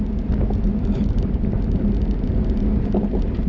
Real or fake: real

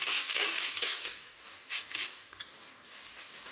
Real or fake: fake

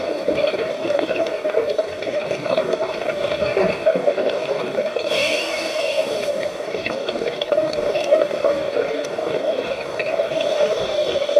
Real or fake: fake